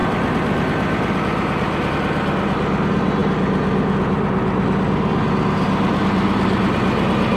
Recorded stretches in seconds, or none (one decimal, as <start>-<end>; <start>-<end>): 1.9-7.4